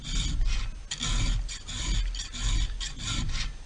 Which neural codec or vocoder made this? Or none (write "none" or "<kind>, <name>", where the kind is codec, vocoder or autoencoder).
none